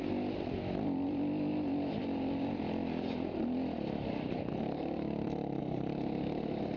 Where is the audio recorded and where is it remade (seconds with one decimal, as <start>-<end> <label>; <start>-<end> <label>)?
0.0-1.5 recorded; 1.5-5.6 remade; 5.6-6.8 recorded